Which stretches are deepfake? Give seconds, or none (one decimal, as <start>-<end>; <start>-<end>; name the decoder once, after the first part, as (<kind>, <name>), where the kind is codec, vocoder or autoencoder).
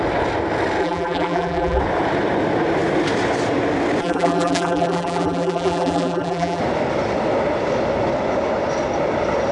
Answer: 0.8-1.8 (vocoder, BigVGAN v2); 4.0-6.6